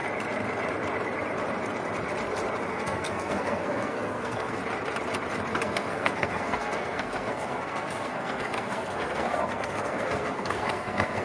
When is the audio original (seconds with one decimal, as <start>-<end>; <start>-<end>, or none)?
0.0-2.7; 4.6-5.5